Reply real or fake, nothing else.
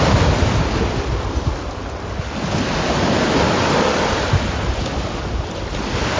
real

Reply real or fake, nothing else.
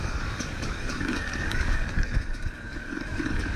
fake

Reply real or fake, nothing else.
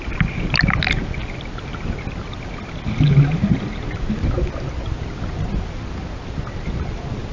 real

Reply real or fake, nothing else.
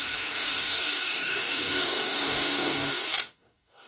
fake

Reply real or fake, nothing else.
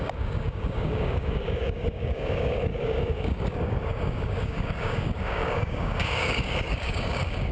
fake